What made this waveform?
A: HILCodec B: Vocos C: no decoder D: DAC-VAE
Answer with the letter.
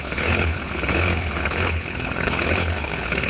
A